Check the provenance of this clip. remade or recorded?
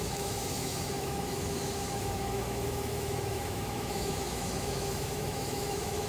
remade